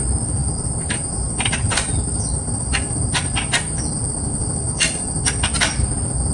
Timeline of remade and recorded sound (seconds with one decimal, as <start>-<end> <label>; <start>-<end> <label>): 0.0-0.4 recorded; 0.4-2.2 remade; 2.2-4.4 recorded; 4.4-5.2 remade; 5.2-6.3 recorded

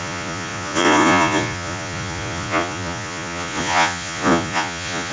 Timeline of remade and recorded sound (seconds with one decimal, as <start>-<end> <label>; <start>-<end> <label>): 0.0-5.1 remade

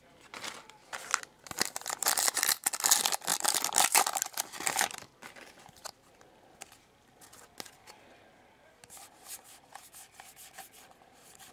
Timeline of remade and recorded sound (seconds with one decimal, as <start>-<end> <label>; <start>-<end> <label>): 0.0-3.3 recorded; 3.3-4.2 remade; 4.2-11.5 recorded

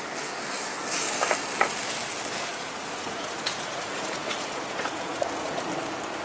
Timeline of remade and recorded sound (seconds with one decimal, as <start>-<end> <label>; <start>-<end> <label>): 0.0-2.5 recorded; 2.5-5.7 remade; 5.7-6.2 recorded

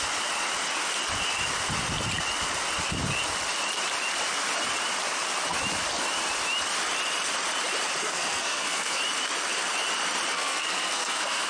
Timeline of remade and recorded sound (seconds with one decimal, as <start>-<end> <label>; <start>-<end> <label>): 0.0-8.0 recorded; 8.0-9.0 remade; 9.0-10.3 recorded; 10.3-11.5 remade

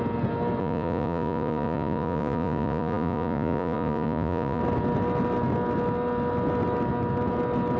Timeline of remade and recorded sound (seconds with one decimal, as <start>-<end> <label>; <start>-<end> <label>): 0.0-0.6 recorded; 0.6-4.6 remade; 4.6-7.8 recorded

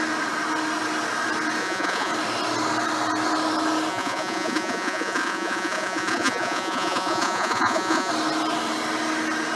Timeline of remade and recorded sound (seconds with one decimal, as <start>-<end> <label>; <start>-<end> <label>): 0.0-1.6 recorded; 1.6-2.1 remade; 2.1-3.9 recorded; 3.9-8.1 remade; 8.1-9.6 recorded